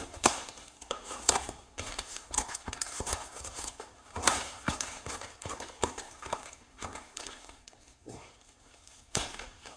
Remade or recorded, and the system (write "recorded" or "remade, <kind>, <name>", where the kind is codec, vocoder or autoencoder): remade, codec, SNAC